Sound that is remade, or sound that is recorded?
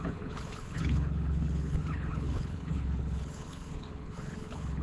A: remade